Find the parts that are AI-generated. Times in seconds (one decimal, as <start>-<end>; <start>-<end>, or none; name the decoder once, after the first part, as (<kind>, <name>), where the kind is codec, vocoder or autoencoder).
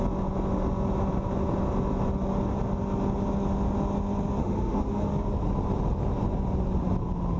4.4-5.1 (autoencoder, DAC-VAE)